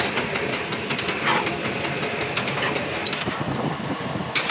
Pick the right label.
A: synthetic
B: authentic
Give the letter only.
B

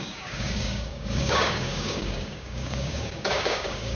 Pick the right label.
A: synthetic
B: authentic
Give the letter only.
A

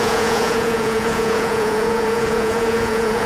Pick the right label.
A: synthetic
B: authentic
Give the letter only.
A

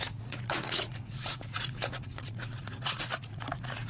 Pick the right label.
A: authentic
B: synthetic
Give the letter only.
B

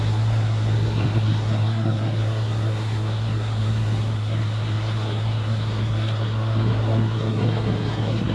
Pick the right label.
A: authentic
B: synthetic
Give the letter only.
B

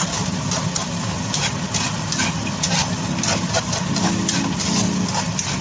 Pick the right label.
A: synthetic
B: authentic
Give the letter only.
B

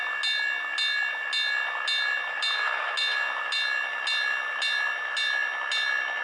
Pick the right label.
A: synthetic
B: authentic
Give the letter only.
B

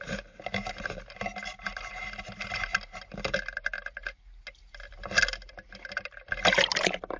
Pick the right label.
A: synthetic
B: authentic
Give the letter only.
B